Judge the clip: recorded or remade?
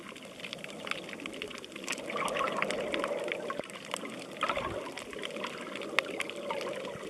recorded